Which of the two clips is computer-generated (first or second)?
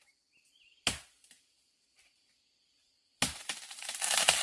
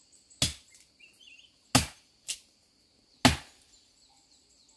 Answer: first